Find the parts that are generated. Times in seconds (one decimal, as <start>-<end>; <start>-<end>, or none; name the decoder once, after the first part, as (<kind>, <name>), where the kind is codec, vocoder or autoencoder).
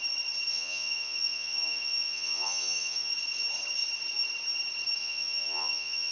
0.5-3.1 (vocoder, Vocos); 5.0-6.1